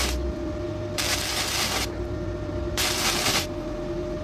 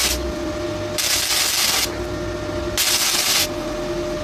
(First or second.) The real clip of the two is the second